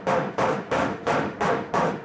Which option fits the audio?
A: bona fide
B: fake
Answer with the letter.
B